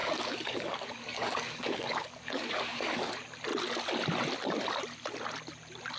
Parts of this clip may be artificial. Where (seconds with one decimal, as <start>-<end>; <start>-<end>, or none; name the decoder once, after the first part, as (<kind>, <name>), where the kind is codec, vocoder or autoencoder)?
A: 0.0-3.1 (codec, DAC)